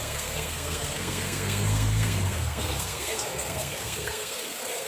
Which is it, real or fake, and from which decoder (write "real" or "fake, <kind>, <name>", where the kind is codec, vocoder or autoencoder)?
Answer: fake, codec, SNAC